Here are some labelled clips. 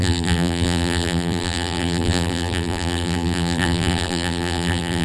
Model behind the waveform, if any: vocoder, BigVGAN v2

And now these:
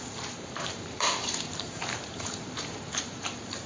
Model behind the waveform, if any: vocoder, BigVGAN v2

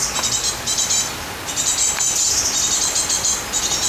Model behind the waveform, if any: vocoder, BigVGAN v2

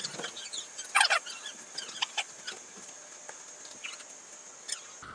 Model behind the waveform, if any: none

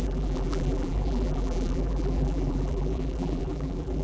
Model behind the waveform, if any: vocoder, BigVGAN v2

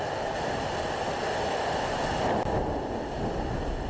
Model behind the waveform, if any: none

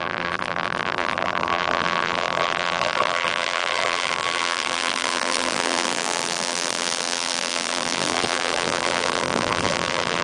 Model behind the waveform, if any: vocoder, BigVGAN v2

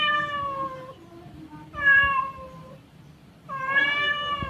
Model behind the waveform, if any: vocoder, BigVGAN v2